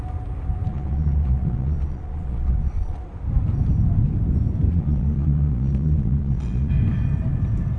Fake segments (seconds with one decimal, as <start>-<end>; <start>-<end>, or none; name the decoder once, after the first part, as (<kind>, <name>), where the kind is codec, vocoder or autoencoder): 0.7-3.0 (vocoder, Vocos); 4.7-6.7